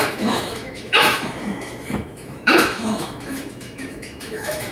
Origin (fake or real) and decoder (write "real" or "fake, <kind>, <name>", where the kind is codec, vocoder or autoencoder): fake, autoencoder, DAC-VAE